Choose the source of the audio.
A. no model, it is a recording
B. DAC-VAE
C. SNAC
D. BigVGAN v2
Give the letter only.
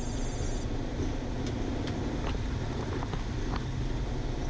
A